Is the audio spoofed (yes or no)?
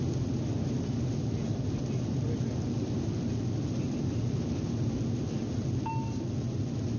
no